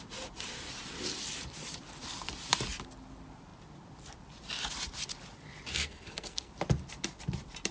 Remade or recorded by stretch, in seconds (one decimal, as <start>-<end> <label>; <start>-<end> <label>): 0.0-5.7 recorded; 5.7-6.5 remade; 6.5-7.7 recorded